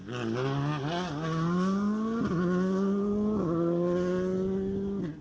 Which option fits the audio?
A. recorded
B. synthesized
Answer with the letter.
A